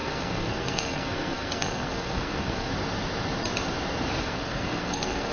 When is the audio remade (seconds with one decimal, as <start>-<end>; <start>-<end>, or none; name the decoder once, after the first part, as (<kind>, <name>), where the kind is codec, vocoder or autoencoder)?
0.0-2.7 (codec, SNAC); 4.2-5.3